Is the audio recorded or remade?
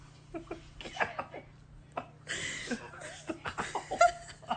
recorded